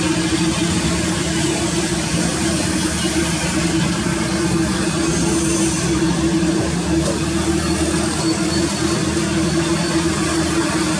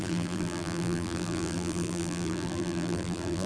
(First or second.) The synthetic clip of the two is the second